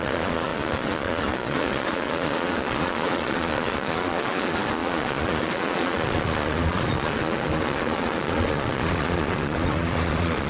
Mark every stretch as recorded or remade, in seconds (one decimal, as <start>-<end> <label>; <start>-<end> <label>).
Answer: 0.0-10.5 remade